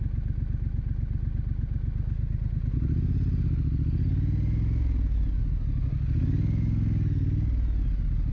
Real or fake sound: real